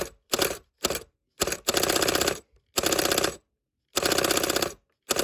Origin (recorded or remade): recorded